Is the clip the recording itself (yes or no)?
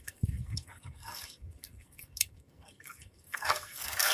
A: no